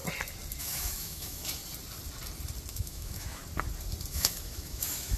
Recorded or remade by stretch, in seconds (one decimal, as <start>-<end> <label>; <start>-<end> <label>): 0.0-0.6 recorded; 0.6-1.6 remade; 1.6-2.7 recorded; 2.7-3.4 remade; 3.4-4.1 recorded; 4.1-5.2 remade

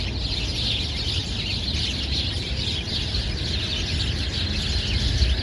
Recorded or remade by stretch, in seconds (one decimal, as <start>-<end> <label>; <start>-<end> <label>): 0.0-1.2 recorded; 1.2-3.4 remade; 3.4-5.4 recorded

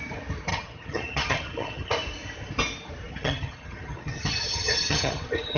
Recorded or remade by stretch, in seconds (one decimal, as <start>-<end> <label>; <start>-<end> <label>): 0.0-0.5 recorded; 0.5-1.9 remade; 1.9-3.1 recorded; 3.1-5.6 remade

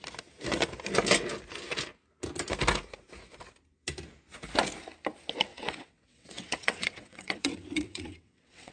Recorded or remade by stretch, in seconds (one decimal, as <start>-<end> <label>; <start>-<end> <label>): 0.0-5.5 recorded; 5.5-8.7 remade

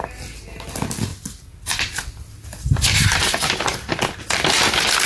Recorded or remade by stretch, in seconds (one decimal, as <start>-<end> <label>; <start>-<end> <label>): 0.0-5.1 recorded

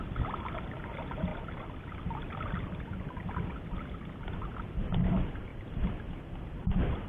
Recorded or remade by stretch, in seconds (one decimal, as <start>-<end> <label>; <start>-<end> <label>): 0.0-1.3 recorded; 1.3-2.0 remade; 2.0-5.5 recorded; 5.5-7.1 remade

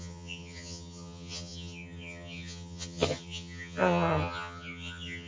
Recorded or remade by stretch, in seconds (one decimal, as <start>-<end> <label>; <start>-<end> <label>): 0.0-5.3 remade

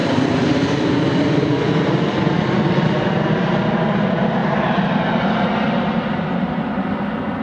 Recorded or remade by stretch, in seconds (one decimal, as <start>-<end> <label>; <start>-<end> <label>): 0.0-7.4 recorded